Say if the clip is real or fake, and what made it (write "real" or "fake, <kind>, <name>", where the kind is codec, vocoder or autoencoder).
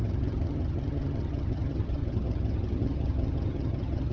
fake, vocoder, HiFi-GAN